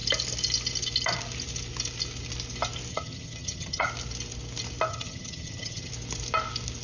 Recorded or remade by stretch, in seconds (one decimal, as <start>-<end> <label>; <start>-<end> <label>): 0.0-2.9 recorded; 2.9-3.9 remade; 3.9-4.9 recorded; 4.9-5.9 remade; 5.9-6.8 recorded